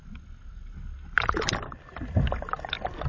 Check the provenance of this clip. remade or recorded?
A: recorded